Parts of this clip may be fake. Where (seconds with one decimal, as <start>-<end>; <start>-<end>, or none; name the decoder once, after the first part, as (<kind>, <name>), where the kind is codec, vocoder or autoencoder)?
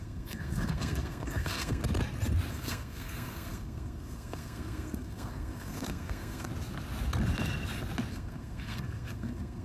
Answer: 0.0-1.8 (codec, SNAC); 2.5-6.5; 8.1-9.6